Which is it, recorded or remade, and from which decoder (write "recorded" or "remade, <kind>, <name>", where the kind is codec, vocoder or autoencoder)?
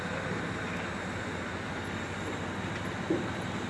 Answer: recorded